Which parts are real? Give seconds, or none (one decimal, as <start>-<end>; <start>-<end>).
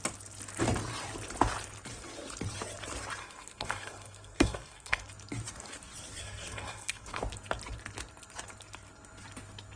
0.0-3.2; 5.1-6.2; 7.2-9.8